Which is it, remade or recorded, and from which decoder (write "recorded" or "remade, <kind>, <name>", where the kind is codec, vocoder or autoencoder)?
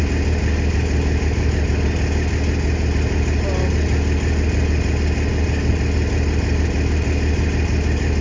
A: recorded